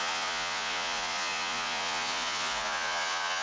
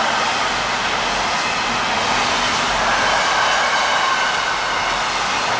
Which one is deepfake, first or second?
first